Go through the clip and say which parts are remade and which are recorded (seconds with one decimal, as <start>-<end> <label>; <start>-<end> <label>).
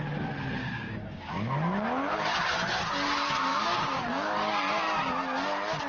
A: 0.0-0.6 recorded; 0.6-1.3 remade; 1.3-3.5 recorded; 3.5-4.0 remade; 4.0-5.9 recorded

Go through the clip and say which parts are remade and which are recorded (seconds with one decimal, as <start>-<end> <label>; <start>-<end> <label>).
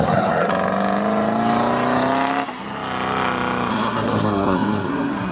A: 0.0-0.5 remade; 0.5-3.7 recorded; 3.7-5.3 remade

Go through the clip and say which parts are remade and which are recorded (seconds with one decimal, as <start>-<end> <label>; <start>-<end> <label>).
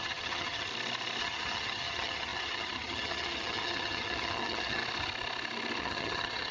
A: 0.0-0.7 remade; 0.7-1.2 recorded; 1.2-4.8 remade; 4.8-5.8 recorded; 5.8-6.5 remade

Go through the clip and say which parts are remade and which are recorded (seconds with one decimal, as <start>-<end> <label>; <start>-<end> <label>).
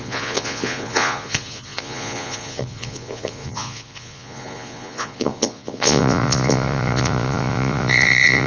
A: 0.0-8.5 remade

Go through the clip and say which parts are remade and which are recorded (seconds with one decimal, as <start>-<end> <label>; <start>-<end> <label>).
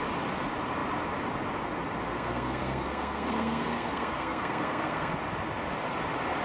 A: 0.0-2.1 recorded; 2.1-5.1 remade; 5.1-6.4 recorded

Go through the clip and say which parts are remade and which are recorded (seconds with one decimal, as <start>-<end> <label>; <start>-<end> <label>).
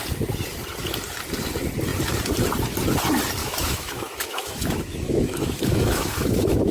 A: 0.0-3.4 recorded; 3.4-6.7 remade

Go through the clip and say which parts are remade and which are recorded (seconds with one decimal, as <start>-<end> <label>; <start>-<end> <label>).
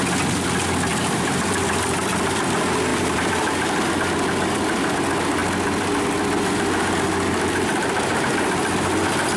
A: 0.0-0.9 recorded; 0.9-2.3 remade; 2.3-2.9 recorded; 2.9-3.9 remade; 3.9-9.4 recorded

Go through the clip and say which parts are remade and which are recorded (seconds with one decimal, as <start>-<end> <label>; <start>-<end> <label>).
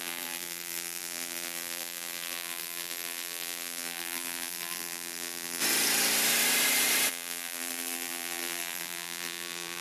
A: 0.0-5.6 remade; 5.6-7.1 recorded; 7.1-9.8 remade